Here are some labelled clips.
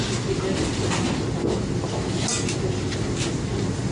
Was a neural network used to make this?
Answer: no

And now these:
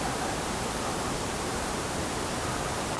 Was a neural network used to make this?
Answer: yes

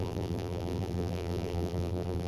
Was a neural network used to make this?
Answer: yes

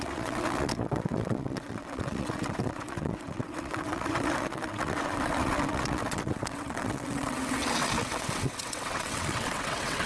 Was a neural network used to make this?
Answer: yes